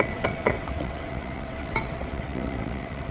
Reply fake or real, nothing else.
fake